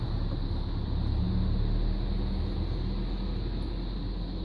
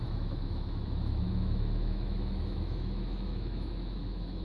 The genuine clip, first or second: first